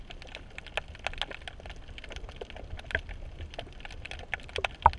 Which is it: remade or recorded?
recorded